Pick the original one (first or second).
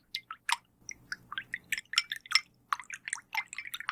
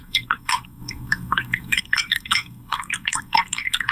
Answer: first